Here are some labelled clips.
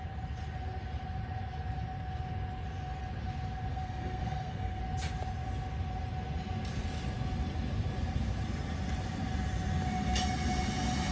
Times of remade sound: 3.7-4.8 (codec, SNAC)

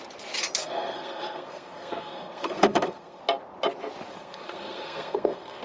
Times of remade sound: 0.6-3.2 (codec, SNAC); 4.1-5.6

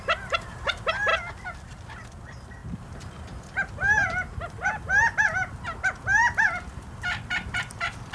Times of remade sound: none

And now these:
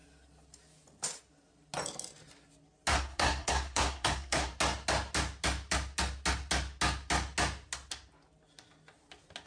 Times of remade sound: 2.9-4.5 (codec, SNAC)

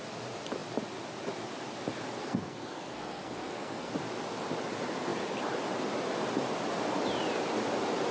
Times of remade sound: 2.2-3.9 (codec, SNAC)

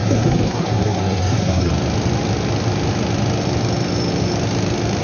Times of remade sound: 0.0-1.7 (codec, SNAC)

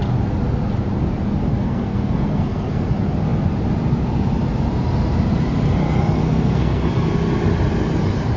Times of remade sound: 1.5-2.9 (codec, SNAC); 6.2-6.9

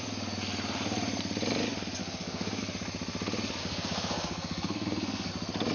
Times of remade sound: 2.0-2.6 (codec, SNAC); 3.6-5.3